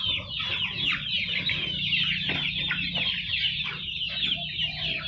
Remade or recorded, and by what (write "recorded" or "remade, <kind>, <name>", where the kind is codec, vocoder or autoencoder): recorded